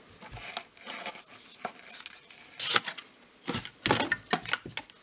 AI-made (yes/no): no